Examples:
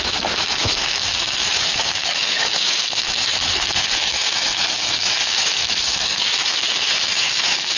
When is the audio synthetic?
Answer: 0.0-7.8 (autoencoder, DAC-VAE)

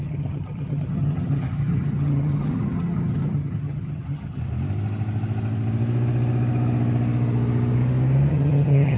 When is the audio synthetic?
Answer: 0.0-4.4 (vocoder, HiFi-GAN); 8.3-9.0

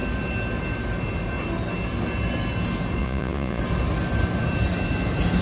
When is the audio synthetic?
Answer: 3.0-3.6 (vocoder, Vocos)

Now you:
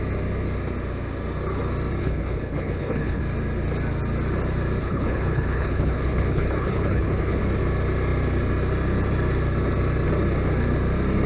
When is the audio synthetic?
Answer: 2.0-3.2 (codec, HILCodec); 4.8-7.4